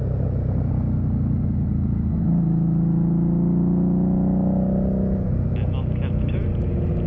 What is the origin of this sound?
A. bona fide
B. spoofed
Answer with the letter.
A